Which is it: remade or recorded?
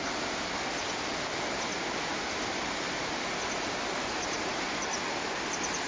recorded